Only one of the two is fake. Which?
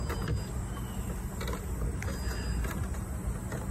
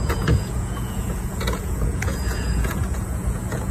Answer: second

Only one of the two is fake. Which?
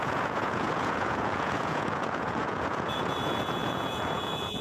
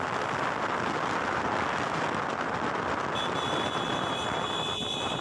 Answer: first